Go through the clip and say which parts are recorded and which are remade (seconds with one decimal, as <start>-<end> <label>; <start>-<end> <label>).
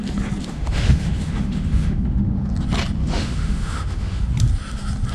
0.0-0.4 recorded; 0.4-2.5 remade; 2.5-3.0 recorded; 3.0-4.2 remade; 4.2-5.1 recorded